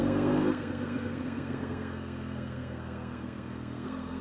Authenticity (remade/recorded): remade